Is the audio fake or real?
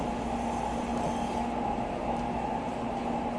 real